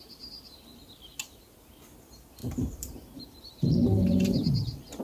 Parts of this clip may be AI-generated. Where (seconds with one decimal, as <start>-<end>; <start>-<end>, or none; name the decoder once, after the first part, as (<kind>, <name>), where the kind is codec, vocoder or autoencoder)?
2.4-5.0 (vocoder, BigVGAN v2)